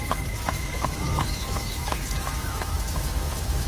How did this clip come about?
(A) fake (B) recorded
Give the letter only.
A